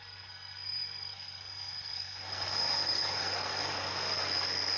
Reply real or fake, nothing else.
fake